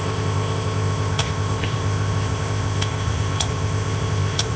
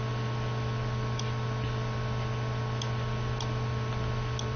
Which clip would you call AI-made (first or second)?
first